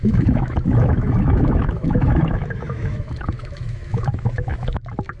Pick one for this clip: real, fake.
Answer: fake